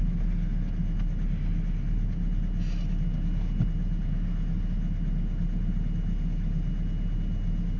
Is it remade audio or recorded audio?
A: recorded